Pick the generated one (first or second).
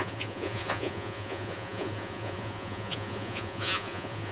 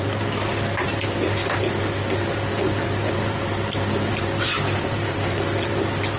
first